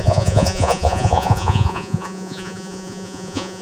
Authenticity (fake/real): fake